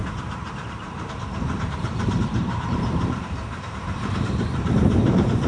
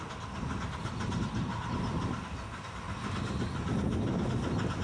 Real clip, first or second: second